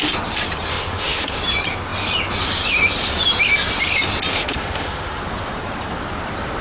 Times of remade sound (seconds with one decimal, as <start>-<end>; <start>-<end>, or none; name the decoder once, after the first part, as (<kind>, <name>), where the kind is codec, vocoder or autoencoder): 0.7-1.4 (autoencoder, DAC-VAE); 4.3-5.2